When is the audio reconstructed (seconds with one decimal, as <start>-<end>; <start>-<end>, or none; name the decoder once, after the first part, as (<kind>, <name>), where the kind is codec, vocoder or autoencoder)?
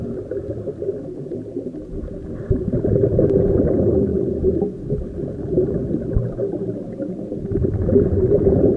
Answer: none